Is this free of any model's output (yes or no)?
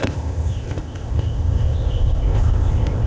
no